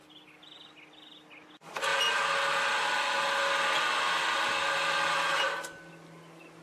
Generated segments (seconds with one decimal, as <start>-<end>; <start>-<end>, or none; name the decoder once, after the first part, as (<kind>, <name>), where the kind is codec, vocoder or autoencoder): none